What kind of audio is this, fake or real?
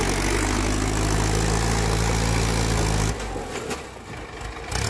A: real